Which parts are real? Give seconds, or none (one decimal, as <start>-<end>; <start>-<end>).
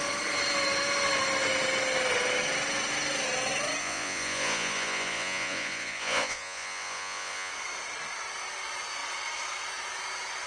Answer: 0.0-3.8; 7.5-10.5